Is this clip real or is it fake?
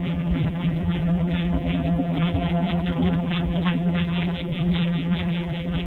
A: fake